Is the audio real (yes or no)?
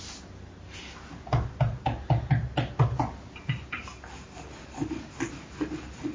yes